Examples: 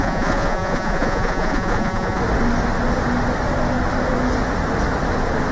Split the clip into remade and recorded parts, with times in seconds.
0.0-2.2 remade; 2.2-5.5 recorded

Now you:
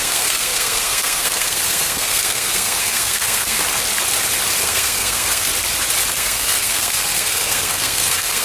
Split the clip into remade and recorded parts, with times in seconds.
0.0-3.6 remade; 3.6-4.6 recorded; 4.6-5.5 remade; 5.5-6.1 recorded; 6.1-8.4 remade

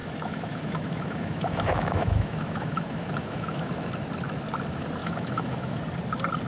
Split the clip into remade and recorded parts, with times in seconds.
0.0-3.9 remade; 3.9-5.0 recorded; 5.0-5.8 remade; 5.8-6.5 recorded